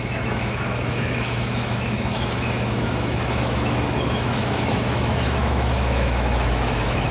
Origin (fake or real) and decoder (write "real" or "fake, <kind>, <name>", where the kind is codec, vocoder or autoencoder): fake, autoencoder, DAC-VAE